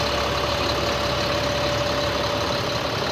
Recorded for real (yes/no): yes